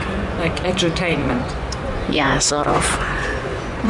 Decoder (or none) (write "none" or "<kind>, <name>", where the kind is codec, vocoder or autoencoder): vocoder, Vocos